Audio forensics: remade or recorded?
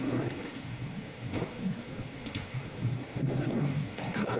remade